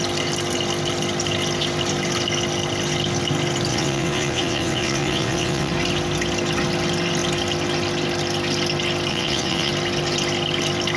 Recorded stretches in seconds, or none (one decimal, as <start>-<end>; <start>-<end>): 0.0-3.7; 5.7-9.1; 9.7-11.0